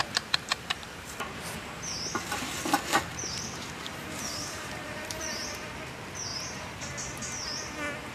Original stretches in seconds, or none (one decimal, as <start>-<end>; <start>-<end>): 1.4-3.1; 5.7-6.3; 6.9-8.1